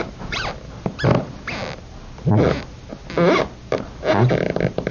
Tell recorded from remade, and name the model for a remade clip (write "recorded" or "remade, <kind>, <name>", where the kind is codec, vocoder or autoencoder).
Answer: recorded